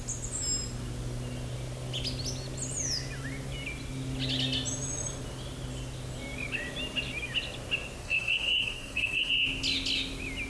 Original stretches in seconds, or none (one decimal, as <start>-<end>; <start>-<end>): 0.0-8.0; 9.3-10.5